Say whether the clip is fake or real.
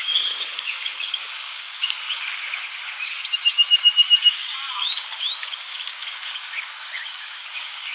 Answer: fake